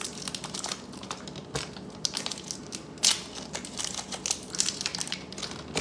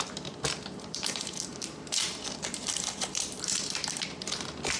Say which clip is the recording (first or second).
first